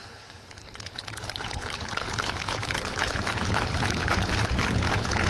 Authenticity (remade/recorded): remade